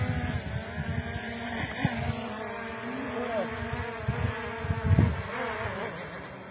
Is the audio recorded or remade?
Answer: recorded